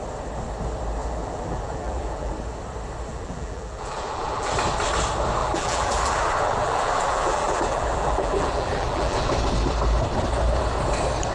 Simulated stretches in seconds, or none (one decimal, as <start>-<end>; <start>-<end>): 1.0-2.3; 3.1-4.5; 5.4-9.3